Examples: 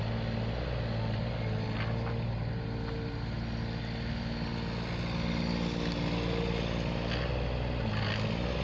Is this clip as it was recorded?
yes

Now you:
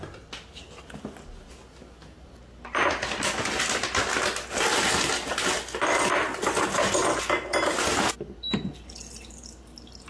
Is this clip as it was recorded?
yes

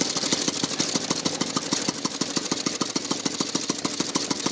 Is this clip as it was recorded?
yes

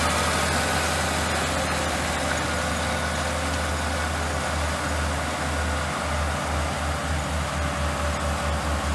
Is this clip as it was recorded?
yes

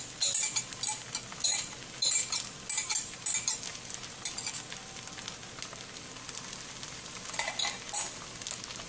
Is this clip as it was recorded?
yes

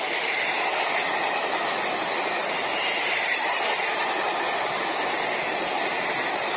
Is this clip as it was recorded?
yes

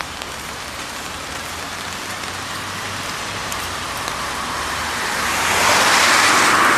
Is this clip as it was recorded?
no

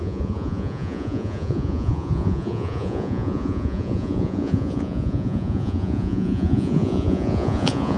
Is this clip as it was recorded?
no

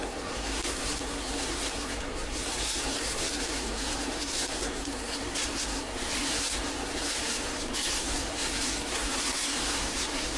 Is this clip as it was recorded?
no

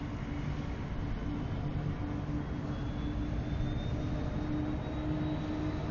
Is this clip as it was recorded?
yes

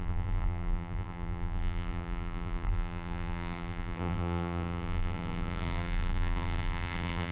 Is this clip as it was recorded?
no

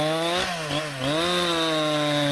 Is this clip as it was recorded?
yes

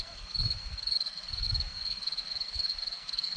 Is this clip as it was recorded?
no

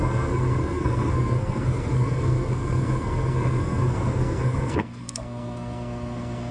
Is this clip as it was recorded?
no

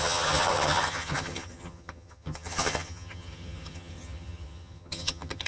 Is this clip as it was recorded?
no